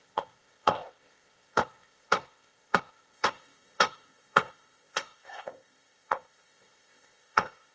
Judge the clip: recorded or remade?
remade